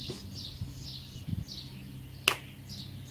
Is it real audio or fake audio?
real